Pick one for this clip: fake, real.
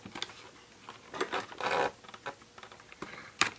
real